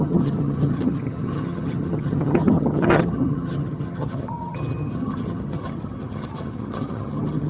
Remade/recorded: remade